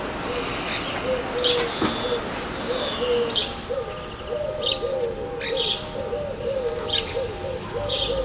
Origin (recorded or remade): recorded